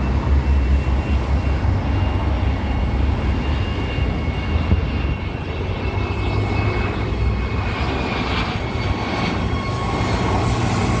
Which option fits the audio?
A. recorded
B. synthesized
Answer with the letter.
A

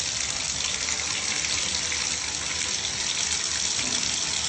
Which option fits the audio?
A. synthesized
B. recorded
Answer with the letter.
B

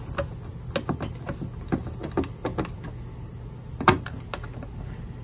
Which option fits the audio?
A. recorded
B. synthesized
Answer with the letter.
A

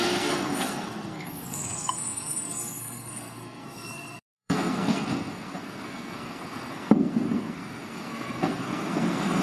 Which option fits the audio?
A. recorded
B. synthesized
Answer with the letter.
B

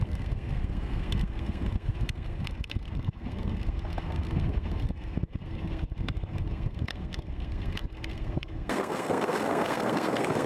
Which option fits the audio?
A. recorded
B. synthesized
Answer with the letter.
B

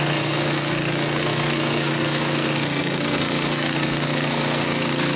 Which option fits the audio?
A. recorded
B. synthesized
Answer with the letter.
B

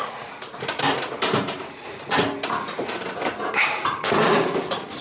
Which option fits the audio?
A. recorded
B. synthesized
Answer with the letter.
A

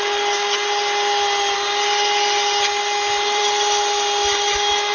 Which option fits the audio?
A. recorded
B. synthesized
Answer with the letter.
A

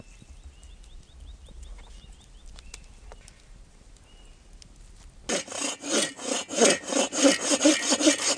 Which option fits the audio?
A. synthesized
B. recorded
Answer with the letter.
B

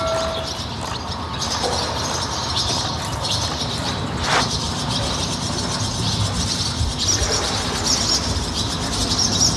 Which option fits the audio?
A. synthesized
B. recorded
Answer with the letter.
B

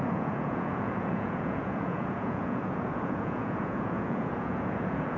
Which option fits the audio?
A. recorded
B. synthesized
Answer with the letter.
B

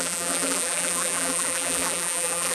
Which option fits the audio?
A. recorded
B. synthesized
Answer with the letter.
B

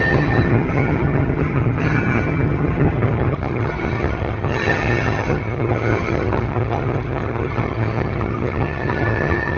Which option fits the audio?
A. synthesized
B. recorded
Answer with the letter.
A